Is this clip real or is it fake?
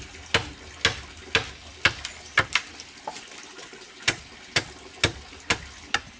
real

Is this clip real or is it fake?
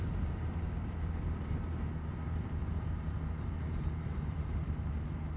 fake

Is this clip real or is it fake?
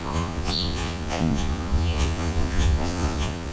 fake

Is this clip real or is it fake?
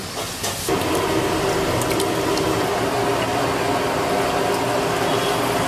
real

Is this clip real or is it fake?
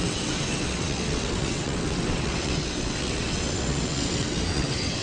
fake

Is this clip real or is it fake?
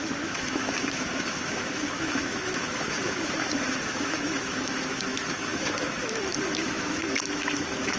fake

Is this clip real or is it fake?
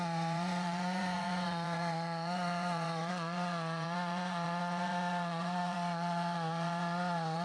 fake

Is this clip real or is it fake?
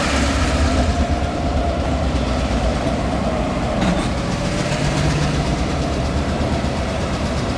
fake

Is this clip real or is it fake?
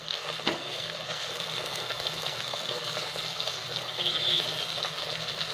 fake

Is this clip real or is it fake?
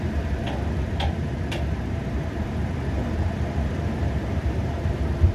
fake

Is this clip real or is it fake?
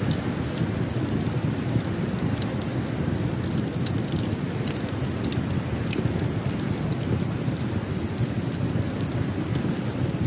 real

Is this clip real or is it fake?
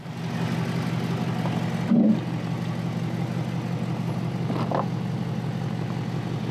real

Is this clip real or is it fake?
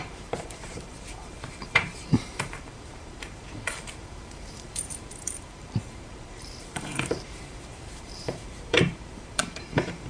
fake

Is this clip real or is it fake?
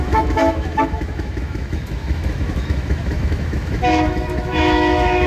fake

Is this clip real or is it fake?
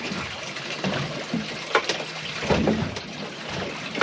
real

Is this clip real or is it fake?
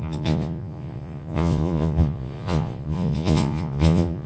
fake